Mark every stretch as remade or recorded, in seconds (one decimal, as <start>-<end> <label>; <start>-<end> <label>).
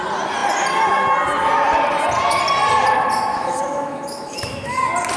0.0-3.3 recorded; 3.3-4.8 remade; 4.8-5.2 recorded